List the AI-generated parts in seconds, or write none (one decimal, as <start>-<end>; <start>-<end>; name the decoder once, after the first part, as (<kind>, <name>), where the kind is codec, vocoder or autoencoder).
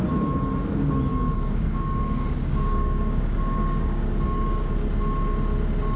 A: 1.1-4.7 (codec, DAC)